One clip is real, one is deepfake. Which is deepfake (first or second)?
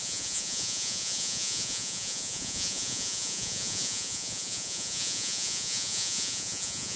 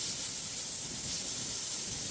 first